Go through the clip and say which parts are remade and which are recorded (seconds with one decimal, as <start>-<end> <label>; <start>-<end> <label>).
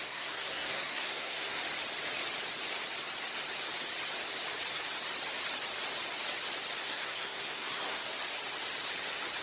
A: 0.0-1.6 remade; 1.6-6.8 recorded; 6.8-8.0 remade; 8.0-9.4 recorded